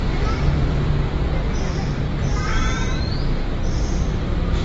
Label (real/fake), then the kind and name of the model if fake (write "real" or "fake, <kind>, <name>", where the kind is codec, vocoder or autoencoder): fake, vocoder, BigVGAN v2